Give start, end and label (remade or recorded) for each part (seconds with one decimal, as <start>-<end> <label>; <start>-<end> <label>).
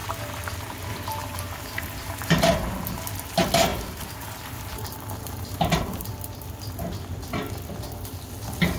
0.0-1.2 recorded; 1.2-2.5 remade; 2.5-3.7 recorded; 3.7-6.1 remade; 6.1-8.8 recorded